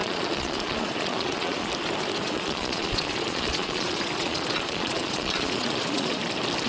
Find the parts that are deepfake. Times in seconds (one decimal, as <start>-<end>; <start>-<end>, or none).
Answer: 0.0-1.7; 2.2-6.2